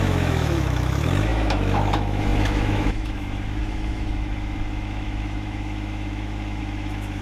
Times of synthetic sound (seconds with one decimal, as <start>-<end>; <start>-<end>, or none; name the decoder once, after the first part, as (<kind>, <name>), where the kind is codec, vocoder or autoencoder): 0.0-7.2 (autoencoder, DAC-VAE)